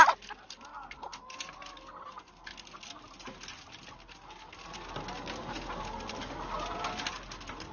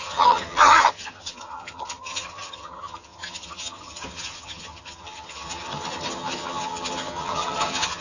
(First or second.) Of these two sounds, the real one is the first